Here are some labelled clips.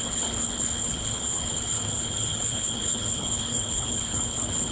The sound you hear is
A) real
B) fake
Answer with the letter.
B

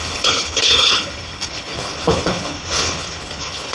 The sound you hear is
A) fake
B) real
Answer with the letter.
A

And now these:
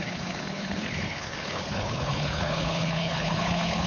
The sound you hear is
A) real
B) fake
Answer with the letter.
B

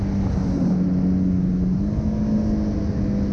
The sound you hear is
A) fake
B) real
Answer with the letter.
B